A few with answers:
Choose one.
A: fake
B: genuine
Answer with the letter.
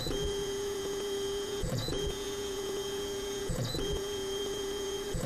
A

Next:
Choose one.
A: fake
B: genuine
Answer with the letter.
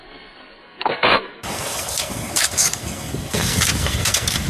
A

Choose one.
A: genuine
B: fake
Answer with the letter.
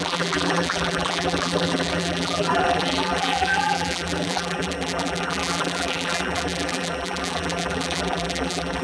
B